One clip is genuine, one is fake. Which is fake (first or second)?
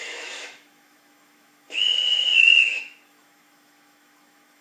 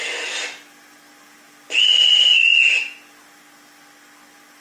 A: first